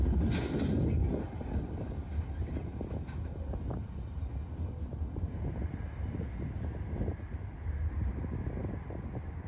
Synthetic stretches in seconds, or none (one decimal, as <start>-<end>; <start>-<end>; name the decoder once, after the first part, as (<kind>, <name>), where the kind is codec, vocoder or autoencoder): none